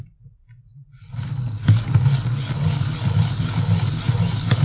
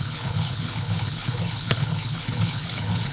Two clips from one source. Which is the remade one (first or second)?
second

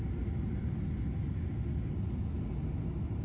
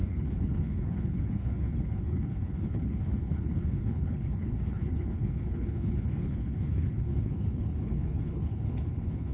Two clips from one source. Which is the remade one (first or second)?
second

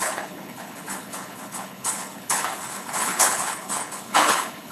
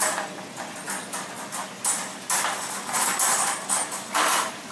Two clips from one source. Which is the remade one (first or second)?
first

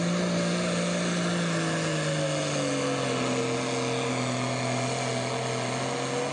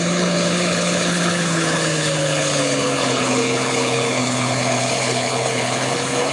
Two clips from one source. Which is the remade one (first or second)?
second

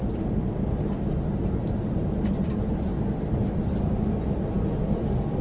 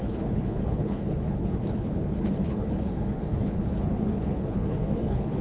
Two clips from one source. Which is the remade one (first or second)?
second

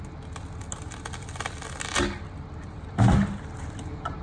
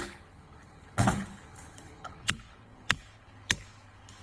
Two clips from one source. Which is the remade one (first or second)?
second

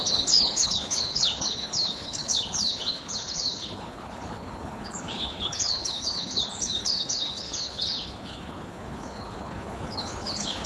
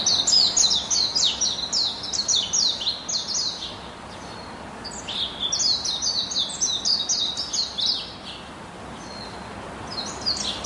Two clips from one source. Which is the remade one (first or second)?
first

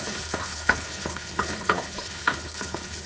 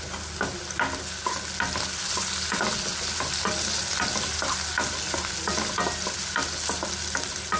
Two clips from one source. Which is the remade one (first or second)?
first